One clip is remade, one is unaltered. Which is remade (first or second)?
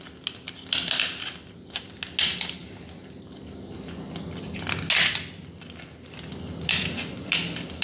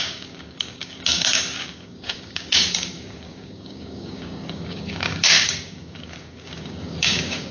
second